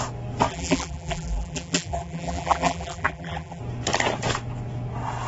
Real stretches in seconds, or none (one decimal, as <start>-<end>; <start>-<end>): 0.0-0.5; 3.6-5.3